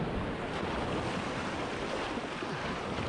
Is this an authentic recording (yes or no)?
yes